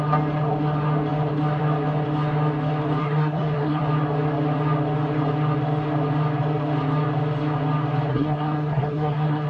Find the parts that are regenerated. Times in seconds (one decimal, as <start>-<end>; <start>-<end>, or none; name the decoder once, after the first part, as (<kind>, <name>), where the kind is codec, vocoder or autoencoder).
3.0-3.8 (codec, SNAC); 8.1-9.5